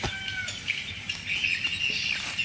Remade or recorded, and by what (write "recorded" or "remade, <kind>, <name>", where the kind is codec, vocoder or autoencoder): recorded